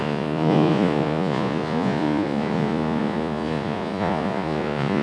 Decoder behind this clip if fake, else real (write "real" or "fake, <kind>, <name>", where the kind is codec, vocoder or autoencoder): fake, vocoder, Vocos